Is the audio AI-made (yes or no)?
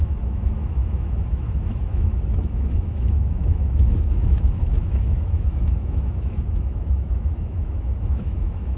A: yes